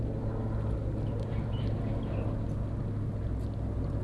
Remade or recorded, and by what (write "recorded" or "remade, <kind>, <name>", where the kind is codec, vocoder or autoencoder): recorded